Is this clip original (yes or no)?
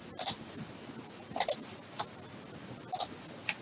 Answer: yes